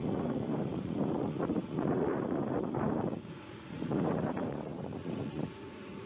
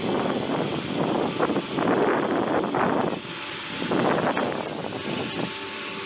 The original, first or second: second